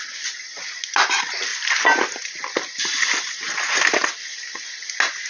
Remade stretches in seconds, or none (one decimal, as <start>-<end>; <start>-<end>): none